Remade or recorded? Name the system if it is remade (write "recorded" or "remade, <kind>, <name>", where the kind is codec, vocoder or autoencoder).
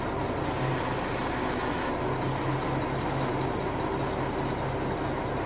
recorded